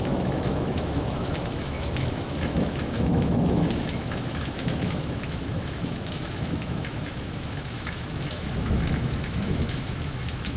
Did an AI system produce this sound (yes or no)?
yes